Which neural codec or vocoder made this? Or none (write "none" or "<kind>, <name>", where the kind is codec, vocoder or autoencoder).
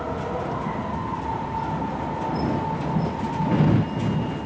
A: none